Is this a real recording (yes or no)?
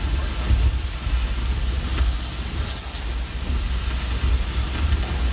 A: yes